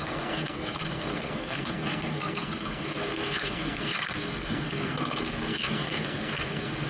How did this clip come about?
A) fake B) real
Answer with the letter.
A